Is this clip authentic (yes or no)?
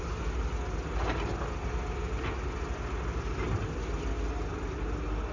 yes